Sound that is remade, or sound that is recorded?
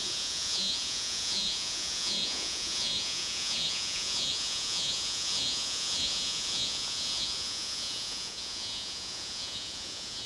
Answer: remade